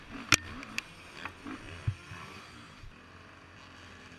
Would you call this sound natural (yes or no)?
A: yes